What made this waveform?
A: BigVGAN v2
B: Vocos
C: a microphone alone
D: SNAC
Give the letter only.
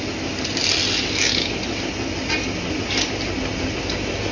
C